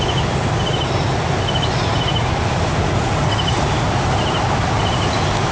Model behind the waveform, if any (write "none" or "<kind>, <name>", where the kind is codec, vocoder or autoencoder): none